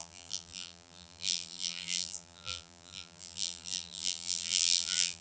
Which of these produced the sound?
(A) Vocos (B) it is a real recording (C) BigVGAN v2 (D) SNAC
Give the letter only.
C